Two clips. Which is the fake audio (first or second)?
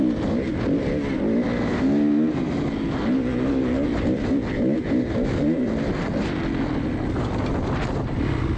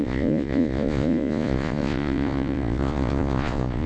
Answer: second